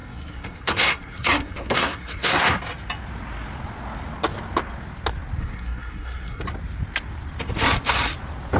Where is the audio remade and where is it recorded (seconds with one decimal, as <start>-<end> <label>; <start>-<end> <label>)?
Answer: 0.0-2.6 remade; 2.6-5.4 recorded; 5.4-6.4 remade; 6.4-8.6 recorded